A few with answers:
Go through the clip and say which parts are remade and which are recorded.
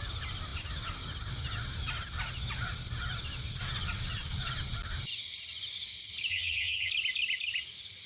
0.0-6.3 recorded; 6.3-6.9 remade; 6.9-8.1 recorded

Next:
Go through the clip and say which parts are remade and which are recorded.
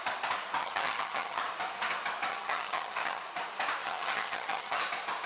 0.0-0.6 recorded; 0.6-1.4 remade; 1.4-2.3 recorded; 2.3-3.2 remade; 3.2-3.8 recorded; 3.8-4.8 remade; 4.8-5.3 recorded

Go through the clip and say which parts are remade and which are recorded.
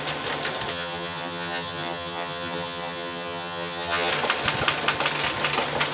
0.0-0.7 recorded; 0.7-4.1 remade; 4.1-5.9 recorded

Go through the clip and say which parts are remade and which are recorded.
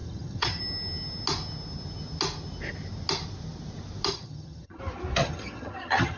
0.0-0.6 remade; 0.6-4.1 recorded; 4.1-4.8 remade; 4.8-5.2 recorded; 5.2-6.2 remade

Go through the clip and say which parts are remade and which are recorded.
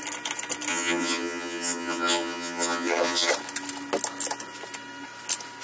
0.0-0.7 recorded; 0.7-3.3 remade; 3.3-5.6 recorded